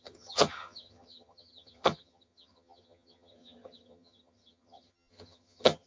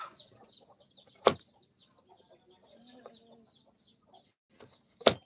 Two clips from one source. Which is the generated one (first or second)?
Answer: first